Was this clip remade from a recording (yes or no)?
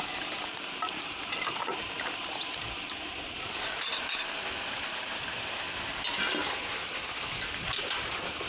no